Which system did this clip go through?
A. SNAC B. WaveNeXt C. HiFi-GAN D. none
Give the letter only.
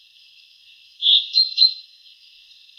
A